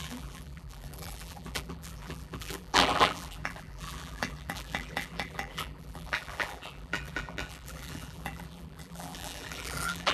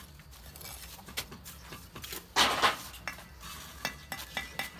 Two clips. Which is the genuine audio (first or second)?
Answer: second